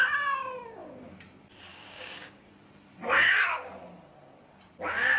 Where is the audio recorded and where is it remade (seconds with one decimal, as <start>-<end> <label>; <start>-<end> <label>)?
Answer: 0.0-1.7 recorded; 1.7-2.5 remade; 2.5-5.2 recorded